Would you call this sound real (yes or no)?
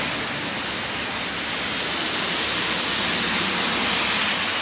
yes